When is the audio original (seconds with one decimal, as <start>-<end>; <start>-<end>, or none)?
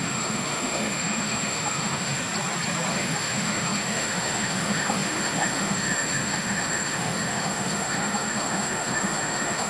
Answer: 2.2-2.9